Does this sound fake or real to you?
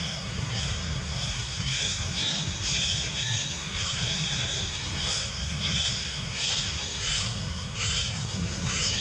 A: fake